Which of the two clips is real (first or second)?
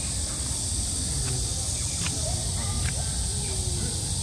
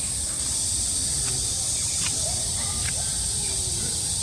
first